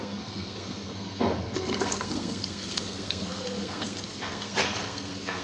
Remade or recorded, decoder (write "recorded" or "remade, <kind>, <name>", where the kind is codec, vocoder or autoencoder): remade, codec, SNAC